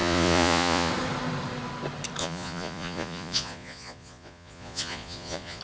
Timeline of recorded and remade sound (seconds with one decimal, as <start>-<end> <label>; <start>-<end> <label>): 0.0-0.9 remade; 0.9-2.2 recorded; 2.2-5.6 remade